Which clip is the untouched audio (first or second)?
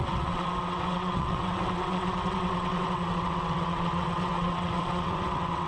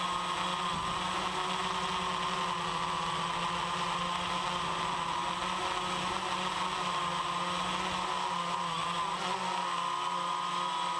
second